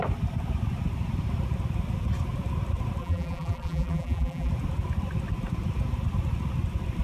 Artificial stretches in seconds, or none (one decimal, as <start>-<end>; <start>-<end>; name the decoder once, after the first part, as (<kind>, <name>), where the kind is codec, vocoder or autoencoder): 3.0-4.5 (vocoder, BigVGAN v2)